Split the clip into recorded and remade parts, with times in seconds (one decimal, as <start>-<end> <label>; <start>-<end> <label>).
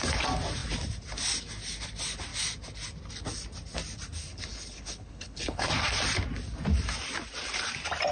0.0-4.3 recorded; 4.3-5.7 remade; 5.7-8.1 recorded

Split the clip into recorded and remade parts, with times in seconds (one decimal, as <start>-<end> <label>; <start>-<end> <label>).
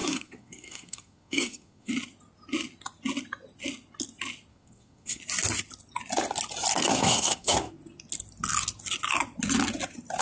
0.0-1.9 remade; 1.9-4.5 recorded; 4.5-5.2 remade; 5.2-6.9 recorded; 6.9-7.7 remade; 7.7-10.2 recorded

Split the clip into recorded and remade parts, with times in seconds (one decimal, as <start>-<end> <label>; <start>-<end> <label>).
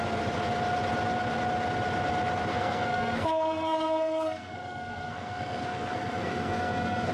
0.0-2.5 recorded; 2.5-7.1 remade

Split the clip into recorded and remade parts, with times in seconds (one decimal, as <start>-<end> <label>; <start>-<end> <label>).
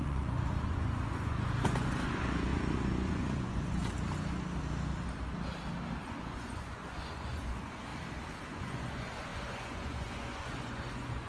0.0-3.8 remade; 3.8-6.0 recorded; 6.0-7.9 remade; 7.9-8.5 recorded; 8.5-11.3 remade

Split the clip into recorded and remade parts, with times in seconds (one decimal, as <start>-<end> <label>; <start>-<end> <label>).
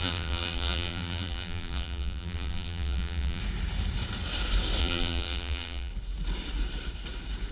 0.0-3.4 remade; 3.4-4.8 recorded; 4.8-5.9 remade; 5.9-7.5 recorded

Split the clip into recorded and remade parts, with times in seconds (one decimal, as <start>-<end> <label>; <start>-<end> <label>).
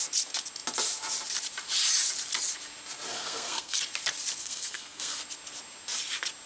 0.0-3.1 recorded; 3.1-3.8 remade; 3.8-4.4 recorded; 4.4-5.2 remade; 5.2-6.5 recorded